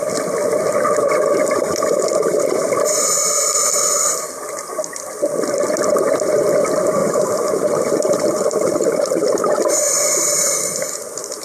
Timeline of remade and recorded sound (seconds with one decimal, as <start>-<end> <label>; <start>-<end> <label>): 0.0-2.6 recorded; 2.6-3.4 remade; 3.4-7.0 recorded; 7.0-11.4 remade